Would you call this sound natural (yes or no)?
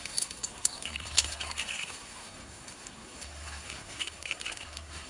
no